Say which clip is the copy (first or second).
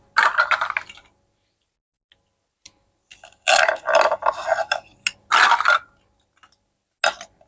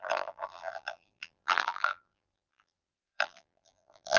second